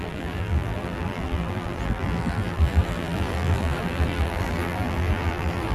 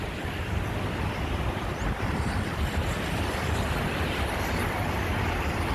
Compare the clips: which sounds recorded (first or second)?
second